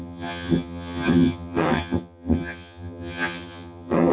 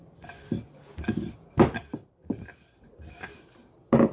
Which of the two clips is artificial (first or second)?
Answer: first